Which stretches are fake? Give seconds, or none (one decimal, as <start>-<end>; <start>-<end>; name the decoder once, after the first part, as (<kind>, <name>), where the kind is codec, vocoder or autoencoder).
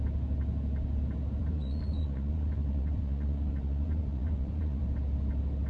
1.4-4.8 (vocoder, Vocos)